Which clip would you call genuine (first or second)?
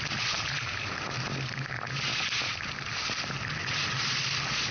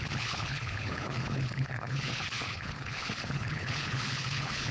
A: first